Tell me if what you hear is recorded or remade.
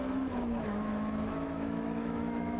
remade